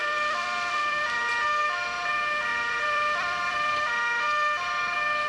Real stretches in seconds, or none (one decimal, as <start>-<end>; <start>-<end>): 1.3-2.5; 3.9-5.3